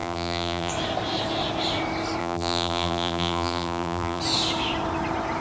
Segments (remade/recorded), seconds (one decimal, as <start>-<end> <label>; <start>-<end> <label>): 0.0-0.7 remade; 0.7-2.2 recorded; 2.2-4.2 remade; 4.2-5.4 recorded